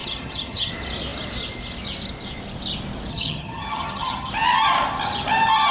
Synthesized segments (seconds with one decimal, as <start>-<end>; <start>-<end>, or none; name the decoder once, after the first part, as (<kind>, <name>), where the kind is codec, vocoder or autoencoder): 0.0-0.7 (vocoder, HiFi-GAN); 3.1-4.3